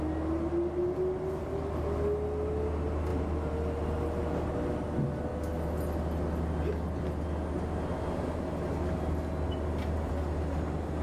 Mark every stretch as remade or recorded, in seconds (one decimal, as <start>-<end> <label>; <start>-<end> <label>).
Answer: 0.0-11.0 recorded